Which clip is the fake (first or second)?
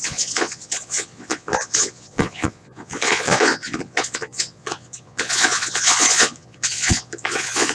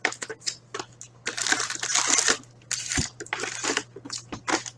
first